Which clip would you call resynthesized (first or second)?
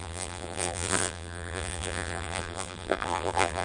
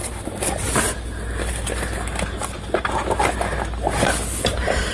first